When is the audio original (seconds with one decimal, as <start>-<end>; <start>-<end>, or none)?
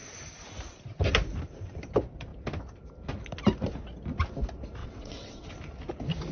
0.0-4.8; 5.5-6.3